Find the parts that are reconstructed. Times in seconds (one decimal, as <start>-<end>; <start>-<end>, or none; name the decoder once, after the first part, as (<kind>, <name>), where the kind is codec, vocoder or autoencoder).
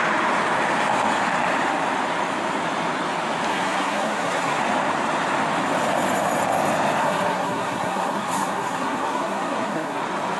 3.5-4.6 (codec, SNAC); 7.0-10.0